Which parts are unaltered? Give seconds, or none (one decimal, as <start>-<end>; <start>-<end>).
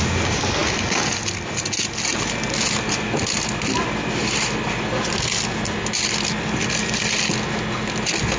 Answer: 0.0-8.4